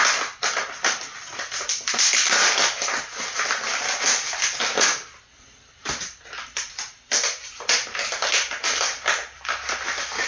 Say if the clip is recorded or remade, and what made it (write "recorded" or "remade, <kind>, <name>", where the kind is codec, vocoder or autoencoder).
recorded